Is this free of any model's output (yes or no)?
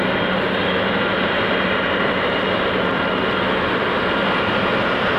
yes